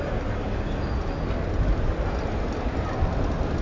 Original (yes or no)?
yes